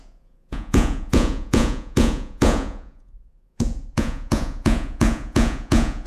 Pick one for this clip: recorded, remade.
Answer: remade